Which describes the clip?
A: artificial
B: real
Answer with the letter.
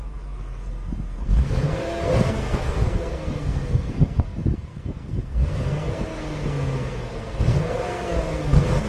A